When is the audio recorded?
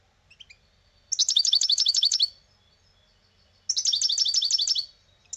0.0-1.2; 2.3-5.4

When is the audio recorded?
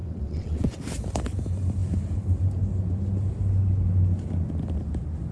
0.8-5.3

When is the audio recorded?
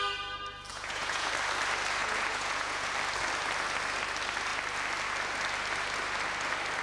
0.0-0.7; 1.3-2.0; 2.9-6.8